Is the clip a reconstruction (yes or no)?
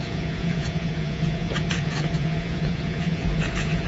yes